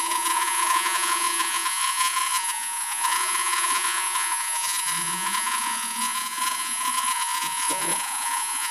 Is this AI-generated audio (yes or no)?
yes